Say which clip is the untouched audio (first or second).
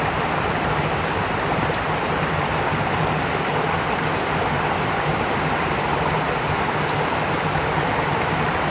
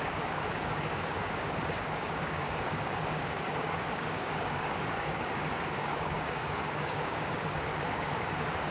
first